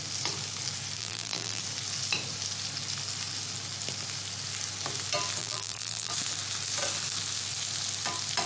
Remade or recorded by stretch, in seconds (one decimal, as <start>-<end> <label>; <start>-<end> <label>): 0.0-1.0 recorded; 1.0-1.6 remade; 1.6-5.4 recorded; 5.4-6.1 remade; 6.1-8.5 recorded